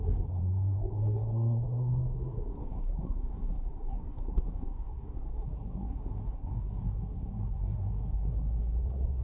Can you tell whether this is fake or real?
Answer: fake